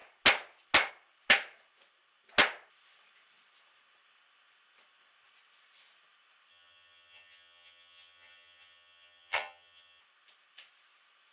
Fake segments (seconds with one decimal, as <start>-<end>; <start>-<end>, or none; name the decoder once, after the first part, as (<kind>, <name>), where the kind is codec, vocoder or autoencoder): 6.5-10.0 (vocoder, HiFi-GAN)